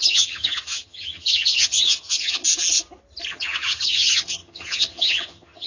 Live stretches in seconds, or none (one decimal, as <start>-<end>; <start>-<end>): 2.4-3.3